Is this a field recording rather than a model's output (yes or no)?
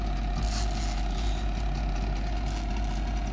yes